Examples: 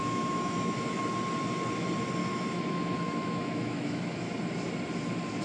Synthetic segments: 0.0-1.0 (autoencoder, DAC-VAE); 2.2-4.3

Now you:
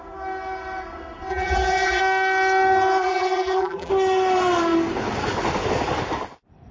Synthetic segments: 1.3-2.0 (vocoder, BigVGAN v2); 3.0-3.9

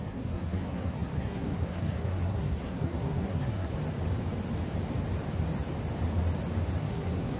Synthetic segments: 0.0-3.7 (codec, SNAC); 6.8-7.4